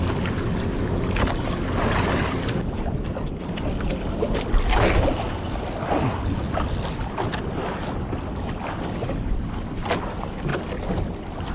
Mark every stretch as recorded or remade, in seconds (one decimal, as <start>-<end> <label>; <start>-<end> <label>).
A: 0.0-11.5 recorded